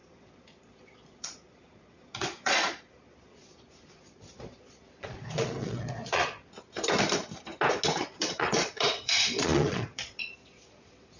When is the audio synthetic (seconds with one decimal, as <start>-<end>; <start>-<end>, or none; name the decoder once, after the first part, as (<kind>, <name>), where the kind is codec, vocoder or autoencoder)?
0.0-6.4 (vocoder, Vocos); 8.0-11.2